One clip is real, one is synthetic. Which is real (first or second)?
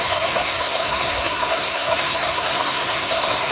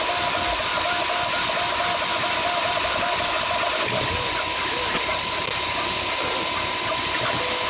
second